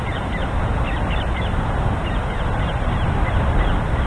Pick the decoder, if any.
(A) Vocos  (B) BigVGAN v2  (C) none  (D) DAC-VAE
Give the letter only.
C